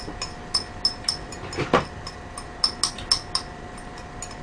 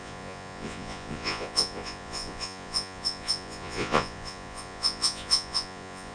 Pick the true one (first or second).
first